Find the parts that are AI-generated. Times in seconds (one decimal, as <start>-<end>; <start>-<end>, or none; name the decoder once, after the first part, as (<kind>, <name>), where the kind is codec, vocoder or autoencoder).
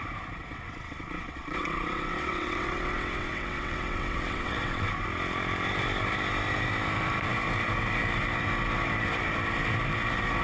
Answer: 0.4-4.9 (vocoder, WaveNeXt)